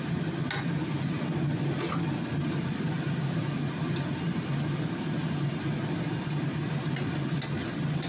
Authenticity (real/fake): real